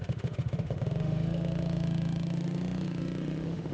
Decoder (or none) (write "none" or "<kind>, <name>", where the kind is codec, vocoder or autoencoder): autoencoder, DAC-VAE